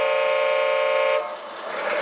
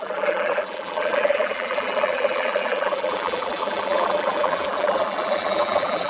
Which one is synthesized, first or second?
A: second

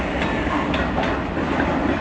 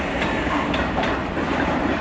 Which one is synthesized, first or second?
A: second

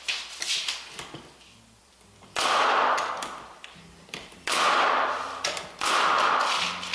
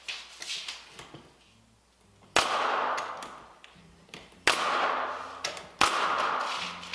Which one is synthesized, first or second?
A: first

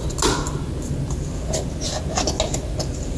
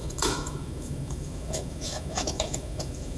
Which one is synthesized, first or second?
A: second